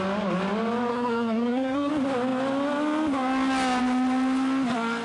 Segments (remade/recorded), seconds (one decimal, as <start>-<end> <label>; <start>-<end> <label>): 0.0-0.9 recorded; 0.9-1.9 remade; 1.9-5.0 recorded